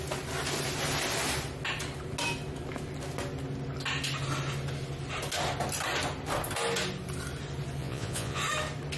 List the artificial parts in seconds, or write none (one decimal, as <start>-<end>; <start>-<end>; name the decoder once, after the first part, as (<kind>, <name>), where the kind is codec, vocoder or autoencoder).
7.8-8.4 (vocoder, Vocos)